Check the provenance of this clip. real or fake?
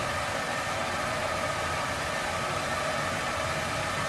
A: real